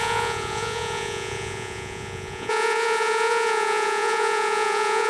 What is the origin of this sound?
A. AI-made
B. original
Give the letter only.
A